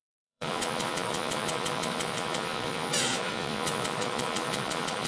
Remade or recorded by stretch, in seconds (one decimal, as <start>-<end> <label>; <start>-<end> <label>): 0.0-5.1 remade